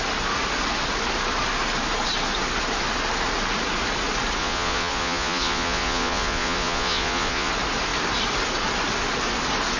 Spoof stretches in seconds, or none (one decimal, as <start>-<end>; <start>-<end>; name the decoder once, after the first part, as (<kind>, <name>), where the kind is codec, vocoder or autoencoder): 4.4-7.5 (vocoder, Vocos)